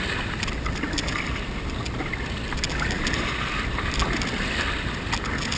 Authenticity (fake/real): real